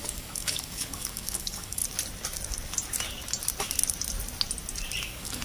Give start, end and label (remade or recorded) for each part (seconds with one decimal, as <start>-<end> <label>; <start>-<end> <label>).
0.0-1.8 remade; 1.8-5.0 recorded; 5.0-5.4 remade